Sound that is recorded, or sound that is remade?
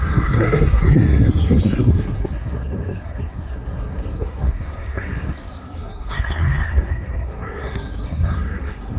remade